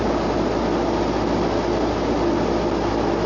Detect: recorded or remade recorded